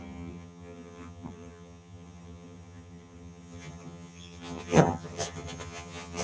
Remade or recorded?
remade